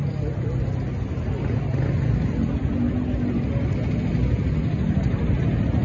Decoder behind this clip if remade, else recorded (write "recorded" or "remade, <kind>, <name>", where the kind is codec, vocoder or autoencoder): recorded